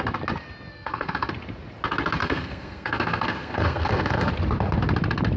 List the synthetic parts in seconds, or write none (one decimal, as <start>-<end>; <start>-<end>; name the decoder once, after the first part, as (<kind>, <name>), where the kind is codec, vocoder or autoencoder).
0.7-1.3 (codec, SNAC); 2.2-4.3